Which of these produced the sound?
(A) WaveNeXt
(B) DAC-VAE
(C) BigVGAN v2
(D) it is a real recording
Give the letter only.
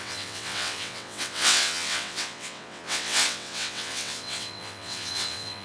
A